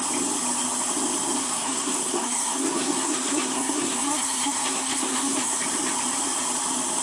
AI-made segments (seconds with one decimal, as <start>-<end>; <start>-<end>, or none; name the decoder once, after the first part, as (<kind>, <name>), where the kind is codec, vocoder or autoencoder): 1.4-5.6 (codec, SNAC)